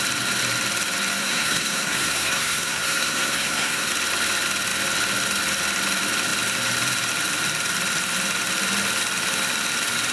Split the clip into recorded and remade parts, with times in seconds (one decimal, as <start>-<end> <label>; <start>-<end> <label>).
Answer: 0.0-1.2 recorded; 1.2-3.9 remade; 3.9-10.1 recorded